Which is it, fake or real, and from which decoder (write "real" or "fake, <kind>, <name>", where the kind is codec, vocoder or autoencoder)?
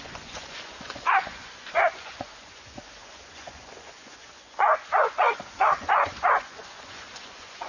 fake, vocoder, Vocos